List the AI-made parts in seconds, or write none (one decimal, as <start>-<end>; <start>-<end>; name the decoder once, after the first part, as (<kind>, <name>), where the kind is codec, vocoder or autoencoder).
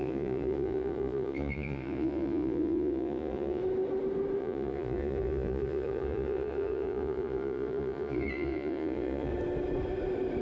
0.0-3.6 (vocoder, Vocos); 4.4-9.3